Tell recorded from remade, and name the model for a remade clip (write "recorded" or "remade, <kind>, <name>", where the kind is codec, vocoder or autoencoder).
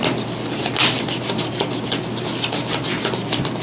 recorded